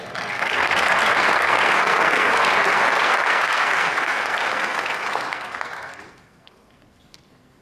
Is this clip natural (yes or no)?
no